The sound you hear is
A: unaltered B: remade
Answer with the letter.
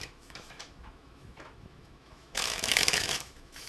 B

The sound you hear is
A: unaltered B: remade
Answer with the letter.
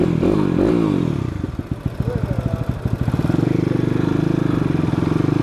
A